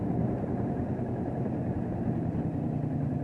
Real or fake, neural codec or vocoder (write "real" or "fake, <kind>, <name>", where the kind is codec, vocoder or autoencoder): real